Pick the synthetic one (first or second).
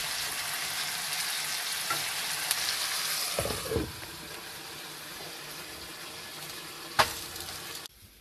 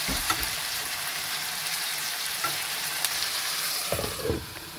second